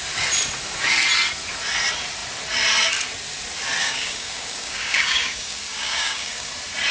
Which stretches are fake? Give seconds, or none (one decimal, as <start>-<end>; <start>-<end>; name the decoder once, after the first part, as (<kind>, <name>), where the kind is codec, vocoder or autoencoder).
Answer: 3.8-6.5 (codec, DAC)